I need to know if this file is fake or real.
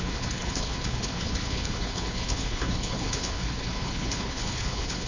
fake